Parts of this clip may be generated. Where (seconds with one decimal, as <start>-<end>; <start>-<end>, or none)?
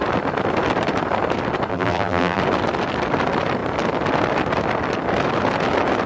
1.7-2.4